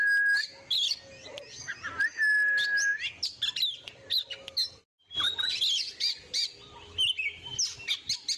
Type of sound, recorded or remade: recorded